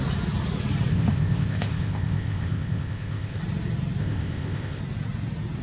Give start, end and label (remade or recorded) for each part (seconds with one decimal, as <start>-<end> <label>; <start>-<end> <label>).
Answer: 0.0-0.9 recorded; 0.9-3.4 remade; 3.4-4.0 recorded; 4.0-4.8 remade; 4.8-5.6 recorded